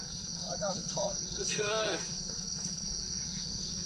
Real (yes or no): no